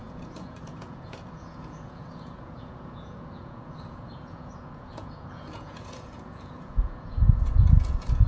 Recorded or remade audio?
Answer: remade